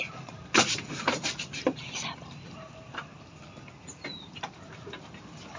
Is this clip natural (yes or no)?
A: yes